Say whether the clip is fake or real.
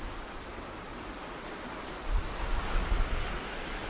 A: real